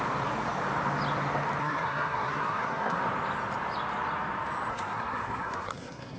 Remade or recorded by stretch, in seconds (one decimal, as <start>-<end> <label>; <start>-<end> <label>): 0.0-1.6 recorded; 1.6-3.0 remade; 3.0-4.7 recorded; 4.7-6.2 remade

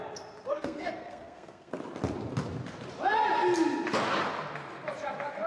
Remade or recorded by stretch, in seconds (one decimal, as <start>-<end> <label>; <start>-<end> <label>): 0.0-0.5 recorded; 0.5-1.7 remade; 1.7-5.5 recorded

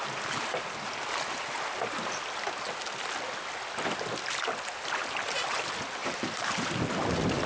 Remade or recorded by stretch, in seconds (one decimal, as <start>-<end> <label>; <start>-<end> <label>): 0.0-5.0 recorded; 5.0-5.6 remade; 5.6-6.0 recorded; 6.0-6.8 remade; 6.8-7.5 recorded

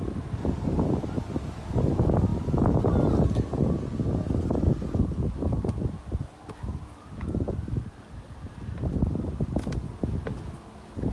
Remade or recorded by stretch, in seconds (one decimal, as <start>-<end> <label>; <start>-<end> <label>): 0.0-11.1 recorded

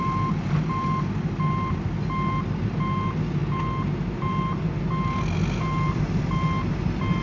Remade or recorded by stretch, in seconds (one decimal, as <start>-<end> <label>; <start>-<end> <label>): 0.0-7.2 recorded

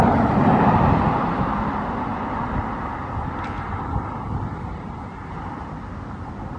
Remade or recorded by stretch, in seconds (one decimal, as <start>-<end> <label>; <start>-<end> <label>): 0.0-6.6 recorded

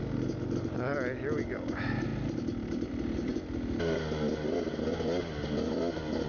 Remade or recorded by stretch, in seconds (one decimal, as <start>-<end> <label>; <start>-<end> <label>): 0.0-6.3 recorded